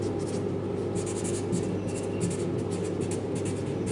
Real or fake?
real